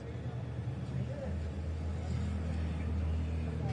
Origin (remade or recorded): recorded